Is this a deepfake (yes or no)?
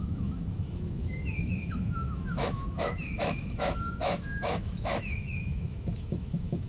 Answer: yes